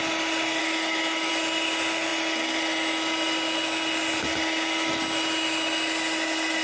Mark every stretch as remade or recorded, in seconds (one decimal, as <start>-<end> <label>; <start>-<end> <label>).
0.0-0.6 recorded; 0.6-1.3 remade; 1.3-6.6 recorded

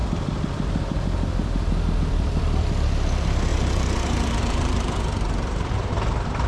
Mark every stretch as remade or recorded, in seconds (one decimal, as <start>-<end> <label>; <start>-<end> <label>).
0.0-2.0 recorded; 2.0-6.5 remade

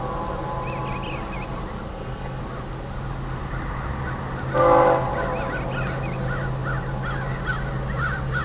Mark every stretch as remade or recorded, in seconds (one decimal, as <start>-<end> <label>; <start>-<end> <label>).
0.0-1.9 recorded; 1.9-2.4 remade; 2.4-8.4 recorded

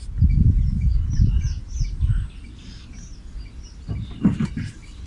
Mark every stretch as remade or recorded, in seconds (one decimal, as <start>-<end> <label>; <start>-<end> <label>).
0.0-5.1 recorded

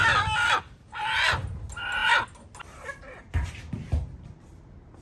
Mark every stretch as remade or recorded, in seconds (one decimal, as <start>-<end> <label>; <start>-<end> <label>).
0.0-5.0 recorded

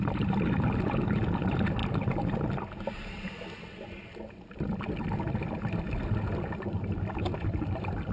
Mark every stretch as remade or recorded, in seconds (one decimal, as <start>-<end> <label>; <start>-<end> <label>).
0.0-8.1 recorded